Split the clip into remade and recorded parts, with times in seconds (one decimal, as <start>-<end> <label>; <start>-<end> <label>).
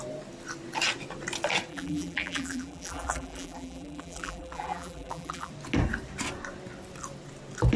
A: 0.0-1.7 recorded; 1.7-5.5 remade; 5.5-7.8 recorded